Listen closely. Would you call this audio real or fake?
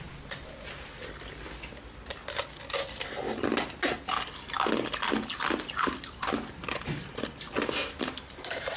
real